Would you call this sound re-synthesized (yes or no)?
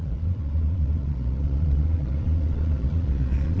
yes